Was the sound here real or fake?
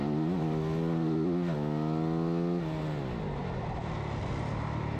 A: real